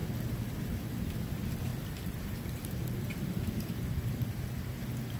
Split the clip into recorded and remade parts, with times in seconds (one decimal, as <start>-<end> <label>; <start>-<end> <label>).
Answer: 0.0-0.8 remade; 0.8-1.7 recorded; 1.7-4.8 remade; 4.8-5.2 recorded